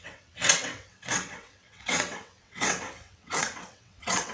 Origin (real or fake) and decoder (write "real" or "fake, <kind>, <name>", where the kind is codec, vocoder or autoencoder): fake, vocoder, WaveNeXt